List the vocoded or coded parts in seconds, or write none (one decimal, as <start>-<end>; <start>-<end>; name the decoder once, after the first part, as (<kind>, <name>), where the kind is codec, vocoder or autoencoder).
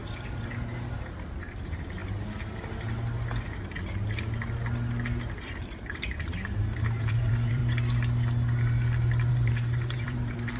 0.0-2.0 (vocoder, BigVGAN v2); 7.0-7.6; 9.3-10.6